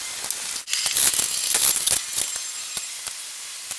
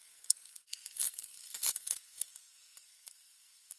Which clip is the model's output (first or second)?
second